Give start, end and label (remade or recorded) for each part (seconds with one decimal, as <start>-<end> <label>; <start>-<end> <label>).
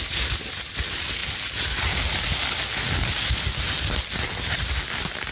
0.0-5.3 recorded